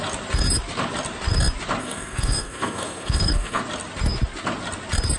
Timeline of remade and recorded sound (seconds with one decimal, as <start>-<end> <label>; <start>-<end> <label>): 0.0-1.8 recorded; 1.8-3.6 remade; 3.6-5.2 recorded

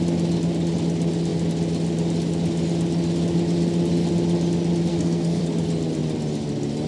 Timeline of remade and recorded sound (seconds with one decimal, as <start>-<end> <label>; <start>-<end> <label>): 0.0-4.9 recorded; 4.9-5.4 remade; 5.4-6.9 recorded

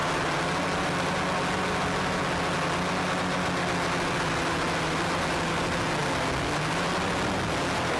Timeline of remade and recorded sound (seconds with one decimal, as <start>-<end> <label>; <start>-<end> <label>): 0.0-8.0 recorded

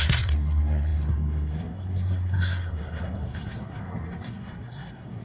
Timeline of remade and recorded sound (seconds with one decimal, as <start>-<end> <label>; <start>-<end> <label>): 0.0-5.2 remade